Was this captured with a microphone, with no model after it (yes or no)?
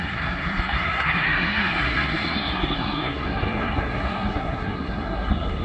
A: no